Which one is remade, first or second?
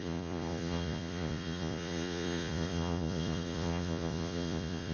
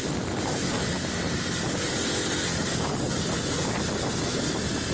first